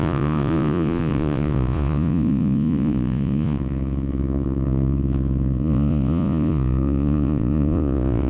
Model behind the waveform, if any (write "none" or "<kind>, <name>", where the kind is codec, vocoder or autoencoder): vocoder, Vocos